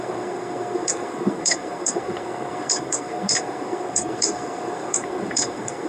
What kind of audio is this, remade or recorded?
remade